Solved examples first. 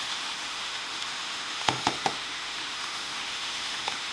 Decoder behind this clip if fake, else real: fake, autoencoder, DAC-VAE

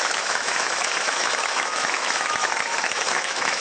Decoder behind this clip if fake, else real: fake, autoencoder, DAC-VAE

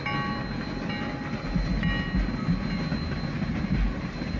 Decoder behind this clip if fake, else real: real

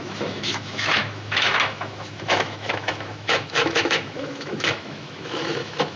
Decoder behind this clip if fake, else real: fake, autoencoder, DAC-VAE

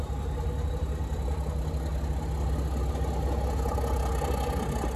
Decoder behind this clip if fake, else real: real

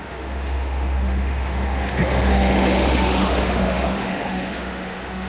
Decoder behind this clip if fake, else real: fake, autoencoder, DAC-VAE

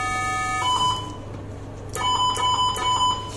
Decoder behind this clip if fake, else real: real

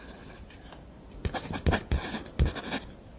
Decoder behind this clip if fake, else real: real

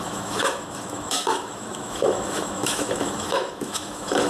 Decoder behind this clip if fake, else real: fake, autoencoder, DAC-VAE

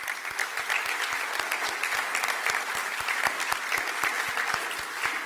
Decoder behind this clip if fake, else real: real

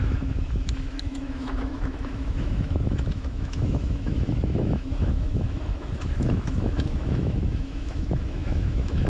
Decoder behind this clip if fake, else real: fake, autoencoder, DAC-VAE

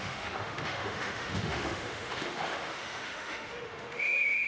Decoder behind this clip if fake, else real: fake, autoencoder, DAC-VAE